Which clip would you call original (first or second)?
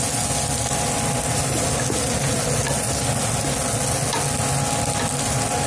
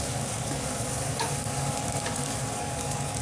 first